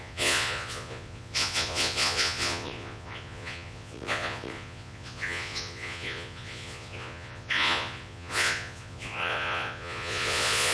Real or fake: fake